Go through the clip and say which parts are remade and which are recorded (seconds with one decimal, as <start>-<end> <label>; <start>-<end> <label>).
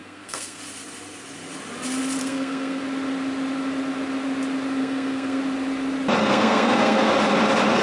0.0-0.6 remade; 0.6-2.2 recorded; 2.2-2.8 remade; 2.8-4.8 recorded; 4.8-5.4 remade; 5.4-6.2 recorded; 6.2-7.1 remade; 7.1-7.8 recorded